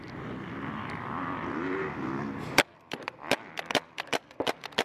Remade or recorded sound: remade